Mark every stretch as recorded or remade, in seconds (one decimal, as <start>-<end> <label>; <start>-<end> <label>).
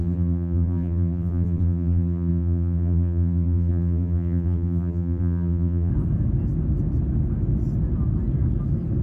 0.0-5.9 remade; 5.9-9.0 recorded